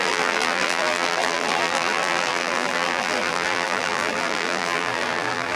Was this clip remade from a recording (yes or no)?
yes